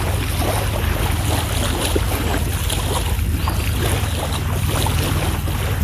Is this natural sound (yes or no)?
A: yes